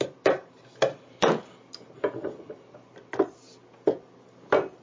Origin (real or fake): real